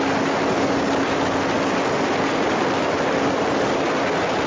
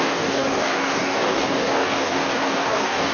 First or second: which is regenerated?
second